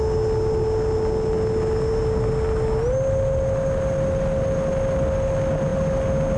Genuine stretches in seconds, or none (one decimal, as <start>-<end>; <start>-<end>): 0.0-6.4